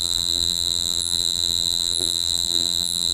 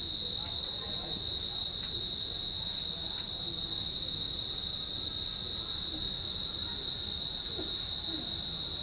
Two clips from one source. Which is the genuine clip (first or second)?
second